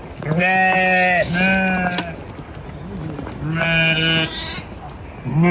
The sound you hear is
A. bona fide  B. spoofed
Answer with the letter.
A